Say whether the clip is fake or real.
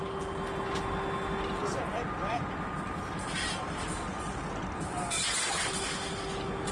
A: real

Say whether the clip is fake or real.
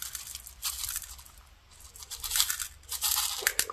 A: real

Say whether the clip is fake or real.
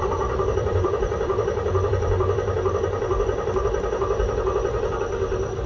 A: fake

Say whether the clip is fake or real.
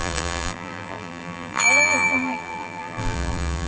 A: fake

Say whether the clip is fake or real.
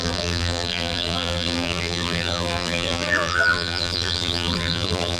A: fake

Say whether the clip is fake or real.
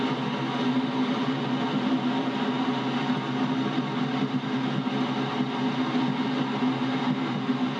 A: real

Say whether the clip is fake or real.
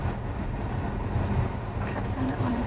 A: fake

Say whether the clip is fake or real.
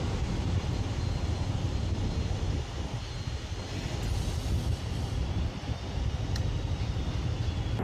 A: real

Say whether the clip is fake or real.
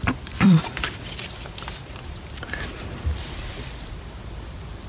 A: fake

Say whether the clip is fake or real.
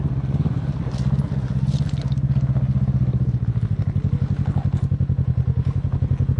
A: real